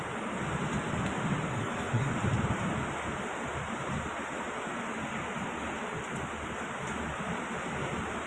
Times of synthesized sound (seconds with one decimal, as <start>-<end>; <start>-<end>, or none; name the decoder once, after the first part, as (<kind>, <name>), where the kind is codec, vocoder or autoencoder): 1.5-2.1 (codec, SNAC)